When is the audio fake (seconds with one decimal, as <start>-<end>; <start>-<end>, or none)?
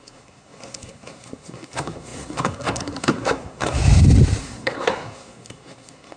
0.0-3.8; 4.4-6.2